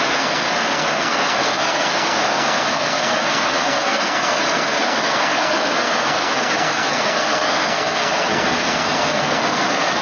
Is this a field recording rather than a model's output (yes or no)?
no